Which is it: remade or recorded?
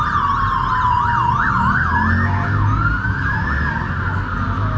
recorded